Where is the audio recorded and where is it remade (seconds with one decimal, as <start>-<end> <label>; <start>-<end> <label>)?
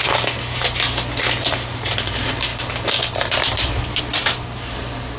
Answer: 0.0-5.2 recorded